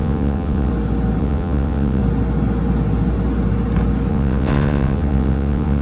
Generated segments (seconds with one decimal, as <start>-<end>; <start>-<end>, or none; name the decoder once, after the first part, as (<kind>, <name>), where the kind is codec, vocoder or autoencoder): 0.0-0.7 (vocoder, WaveNeXt); 1.2-2.0; 4.1-5.8